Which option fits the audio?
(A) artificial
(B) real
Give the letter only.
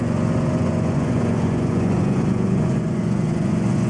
A